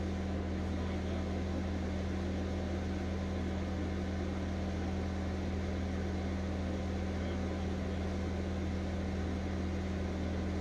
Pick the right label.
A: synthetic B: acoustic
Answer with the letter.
B